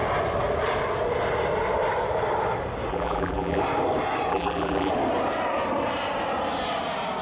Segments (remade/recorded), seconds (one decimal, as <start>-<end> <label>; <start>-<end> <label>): 0.0-2.9 recorded; 2.9-3.6 remade; 3.6-4.3 recorded; 4.3-4.9 remade; 4.9-7.2 recorded